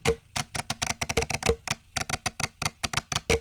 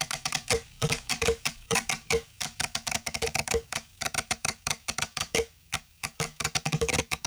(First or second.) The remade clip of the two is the second